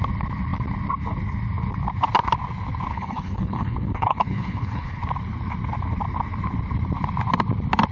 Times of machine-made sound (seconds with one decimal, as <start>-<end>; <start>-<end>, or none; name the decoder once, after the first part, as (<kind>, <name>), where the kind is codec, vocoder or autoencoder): 2.9-5.0 (codec, HILCodec)